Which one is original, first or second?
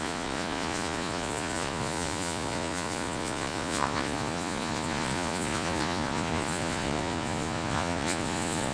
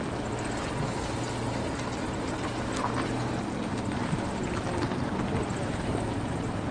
second